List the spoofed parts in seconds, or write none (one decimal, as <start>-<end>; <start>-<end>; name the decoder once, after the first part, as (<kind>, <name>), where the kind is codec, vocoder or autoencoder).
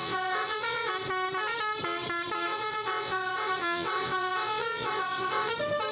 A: 0.0-0.9 (vocoder, WaveNeXt); 2.5-5.5